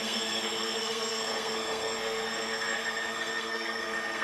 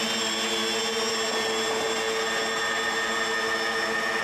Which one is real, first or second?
second